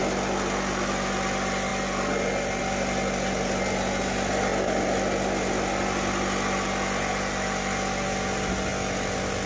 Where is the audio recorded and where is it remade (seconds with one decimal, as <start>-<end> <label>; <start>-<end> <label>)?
0.0-9.5 recorded